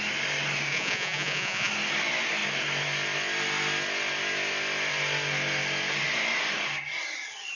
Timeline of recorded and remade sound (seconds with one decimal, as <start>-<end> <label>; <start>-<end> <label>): 0.0-0.7 recorded; 0.7-1.7 remade; 1.7-7.6 recorded